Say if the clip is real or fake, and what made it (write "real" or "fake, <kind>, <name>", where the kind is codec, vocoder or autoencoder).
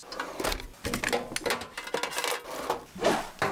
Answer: real